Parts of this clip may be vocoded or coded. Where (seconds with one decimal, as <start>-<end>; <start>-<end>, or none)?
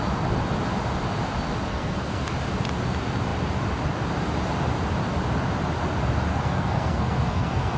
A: 1.7-2.2; 6.3-7.8